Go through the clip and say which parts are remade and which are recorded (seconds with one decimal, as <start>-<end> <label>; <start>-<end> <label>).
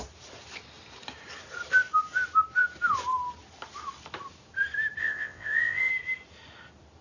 0.0-5.0 recorded; 5.0-5.9 remade; 5.9-7.0 recorded